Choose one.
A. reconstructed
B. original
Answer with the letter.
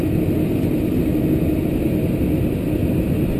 B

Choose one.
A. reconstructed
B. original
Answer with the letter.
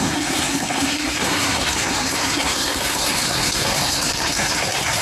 A